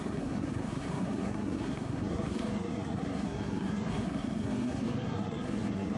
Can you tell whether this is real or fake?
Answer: fake